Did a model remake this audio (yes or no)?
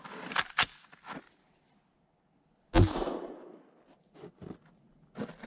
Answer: no